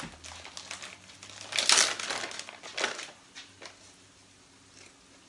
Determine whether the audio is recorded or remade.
recorded